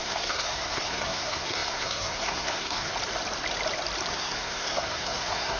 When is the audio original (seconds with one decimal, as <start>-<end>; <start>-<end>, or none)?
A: 2.9-4.1